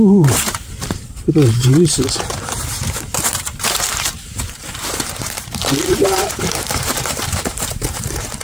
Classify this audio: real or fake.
fake